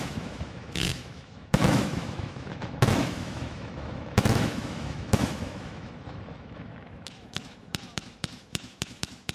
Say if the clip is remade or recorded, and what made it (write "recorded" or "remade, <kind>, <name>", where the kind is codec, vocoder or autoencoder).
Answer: remade, autoencoder, DAC-VAE